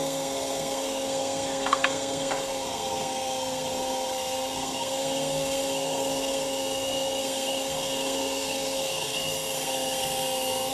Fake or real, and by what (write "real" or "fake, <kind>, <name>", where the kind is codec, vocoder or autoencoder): fake, codec, SNAC